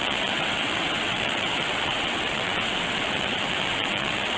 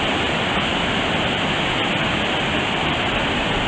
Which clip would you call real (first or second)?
second